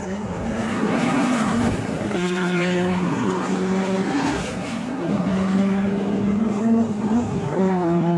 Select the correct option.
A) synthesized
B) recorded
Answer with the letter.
A